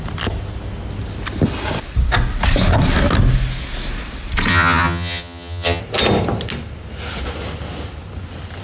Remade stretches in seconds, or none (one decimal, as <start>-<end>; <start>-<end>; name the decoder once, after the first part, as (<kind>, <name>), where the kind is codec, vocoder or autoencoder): 4.5-5.8 (vocoder, HiFi-GAN)